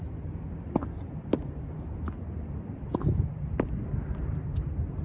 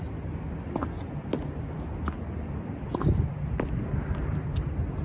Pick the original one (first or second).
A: second